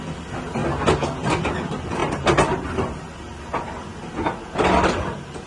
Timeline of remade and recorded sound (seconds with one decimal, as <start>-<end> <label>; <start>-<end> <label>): 0.0-2.0 recorded; 2.0-3.0 remade; 3.0-5.5 recorded